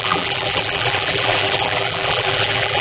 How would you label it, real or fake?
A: fake